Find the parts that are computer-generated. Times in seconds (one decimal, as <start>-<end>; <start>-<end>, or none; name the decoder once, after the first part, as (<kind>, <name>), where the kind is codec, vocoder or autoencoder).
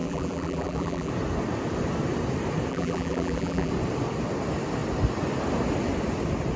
0.0-1.1 (vocoder, BigVGAN v2); 2.7-3.7